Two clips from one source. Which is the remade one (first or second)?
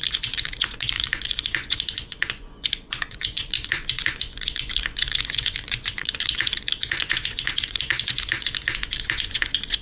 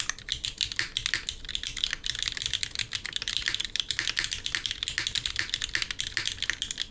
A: first